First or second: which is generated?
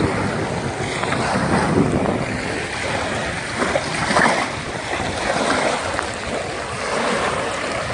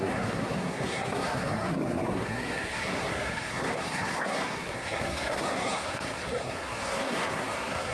second